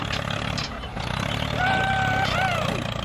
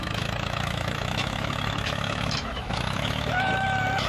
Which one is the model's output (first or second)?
second